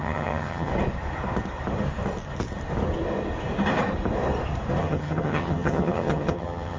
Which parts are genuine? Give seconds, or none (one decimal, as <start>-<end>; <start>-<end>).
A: 0.7-4.8